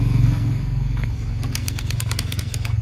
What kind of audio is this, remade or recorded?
remade